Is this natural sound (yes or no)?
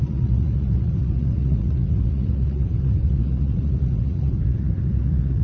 no